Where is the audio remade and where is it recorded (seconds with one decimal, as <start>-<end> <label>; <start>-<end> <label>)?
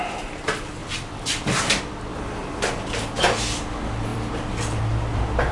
0.0-0.8 recorded; 0.8-1.7 remade; 1.7-2.1 recorded; 2.1-2.6 remade; 2.6-4.1 recorded; 4.1-4.8 remade; 4.8-5.5 recorded